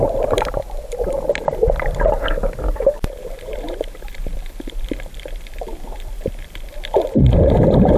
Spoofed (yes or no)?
yes